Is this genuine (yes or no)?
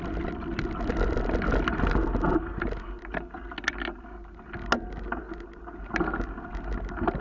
yes